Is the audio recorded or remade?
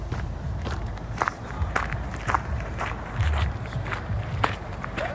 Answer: remade